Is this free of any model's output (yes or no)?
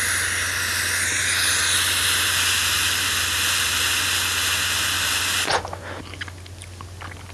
yes